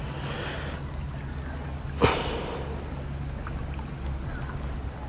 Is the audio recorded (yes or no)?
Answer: yes